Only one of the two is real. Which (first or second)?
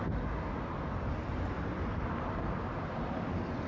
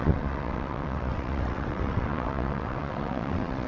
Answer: first